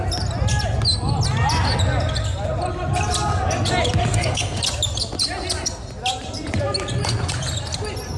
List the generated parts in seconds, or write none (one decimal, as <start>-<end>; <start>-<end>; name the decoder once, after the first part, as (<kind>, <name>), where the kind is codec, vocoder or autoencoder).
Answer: 4.0-4.6 (codec, SNAC)